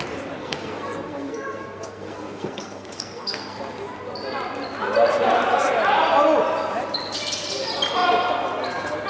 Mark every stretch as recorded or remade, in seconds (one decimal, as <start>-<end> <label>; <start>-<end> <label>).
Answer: 0.0-0.4 recorded; 0.4-3.6 remade; 3.6-9.1 recorded